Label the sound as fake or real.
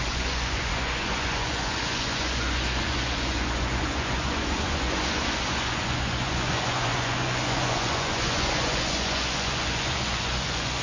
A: fake